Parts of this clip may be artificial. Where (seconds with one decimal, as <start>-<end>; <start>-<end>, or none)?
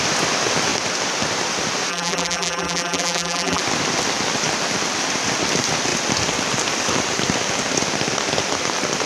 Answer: 1.9-3.6